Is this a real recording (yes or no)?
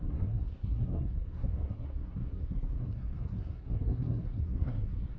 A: no